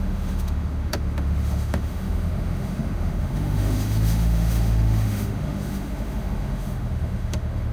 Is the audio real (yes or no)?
no